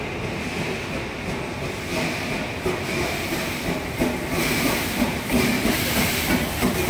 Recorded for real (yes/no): yes